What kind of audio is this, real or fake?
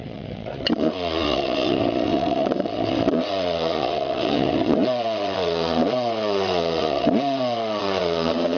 fake